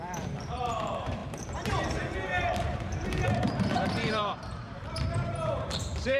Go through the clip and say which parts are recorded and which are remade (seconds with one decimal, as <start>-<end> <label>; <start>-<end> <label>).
0.0-6.2 remade